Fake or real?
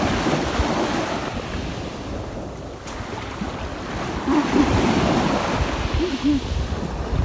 real